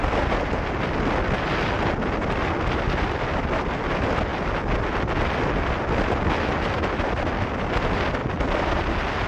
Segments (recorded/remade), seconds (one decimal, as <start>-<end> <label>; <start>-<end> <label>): 0.0-8.2 recorded; 8.2-8.8 remade; 8.8-9.3 recorded